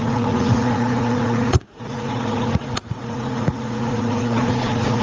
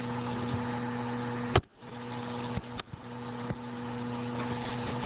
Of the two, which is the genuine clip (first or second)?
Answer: second